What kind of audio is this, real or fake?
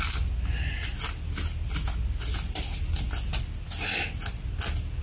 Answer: real